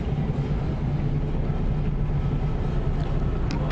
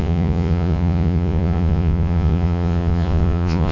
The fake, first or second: second